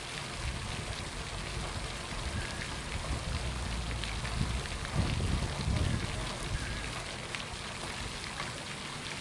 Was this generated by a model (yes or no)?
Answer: no